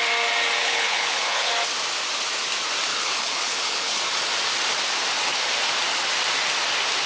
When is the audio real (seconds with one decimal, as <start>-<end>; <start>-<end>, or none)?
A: 0.0-0.6; 1.5-2.9; 4.0-7.1